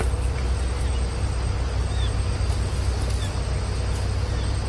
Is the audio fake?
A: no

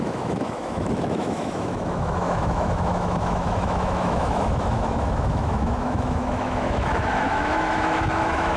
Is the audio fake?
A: yes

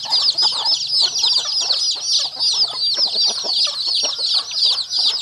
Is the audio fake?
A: no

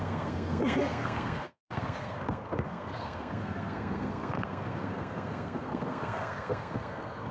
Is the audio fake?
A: yes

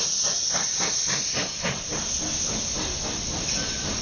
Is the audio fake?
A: no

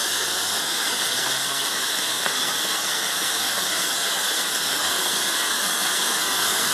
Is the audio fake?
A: yes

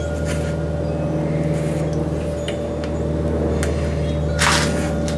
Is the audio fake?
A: no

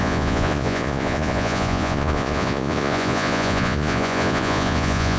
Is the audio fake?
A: yes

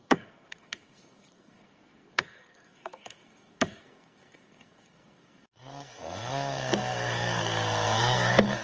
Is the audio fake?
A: yes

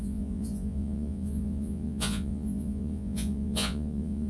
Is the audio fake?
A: yes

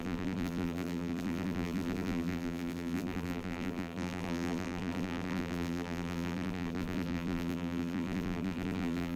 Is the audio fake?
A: yes